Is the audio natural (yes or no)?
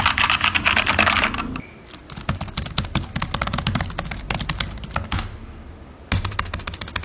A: yes